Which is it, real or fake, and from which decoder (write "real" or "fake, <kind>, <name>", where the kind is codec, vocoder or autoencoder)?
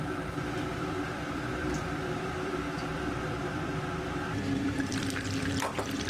fake, vocoder, BigVGAN v2